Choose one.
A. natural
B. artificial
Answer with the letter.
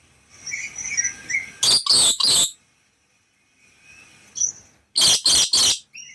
A